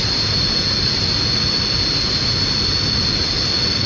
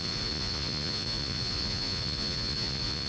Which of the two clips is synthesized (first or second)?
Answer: second